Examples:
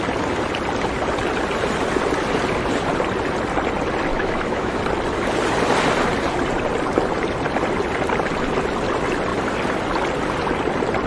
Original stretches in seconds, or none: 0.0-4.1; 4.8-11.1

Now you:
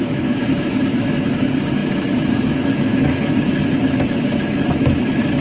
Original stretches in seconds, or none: none

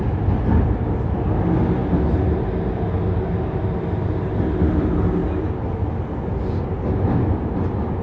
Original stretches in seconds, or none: 0.0-8.0